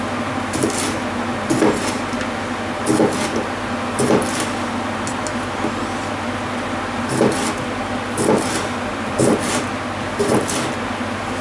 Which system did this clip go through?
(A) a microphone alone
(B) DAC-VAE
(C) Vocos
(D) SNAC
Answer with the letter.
A